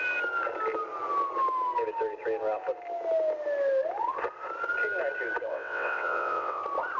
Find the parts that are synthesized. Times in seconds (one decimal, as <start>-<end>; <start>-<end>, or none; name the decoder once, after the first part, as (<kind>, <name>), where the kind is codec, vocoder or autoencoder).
5.5-6.6 (vocoder, WaveNeXt)